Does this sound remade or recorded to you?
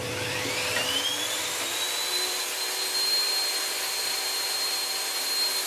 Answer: remade